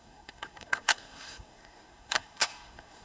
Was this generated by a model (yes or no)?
yes